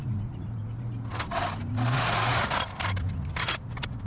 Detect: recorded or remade recorded